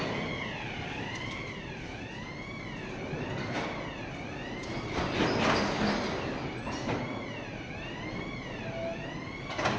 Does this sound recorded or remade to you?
recorded